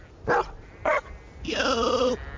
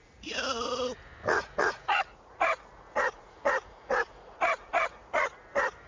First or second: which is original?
first